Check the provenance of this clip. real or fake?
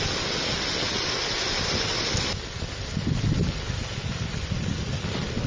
real